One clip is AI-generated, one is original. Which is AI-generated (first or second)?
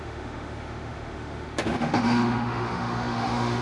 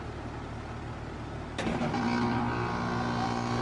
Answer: first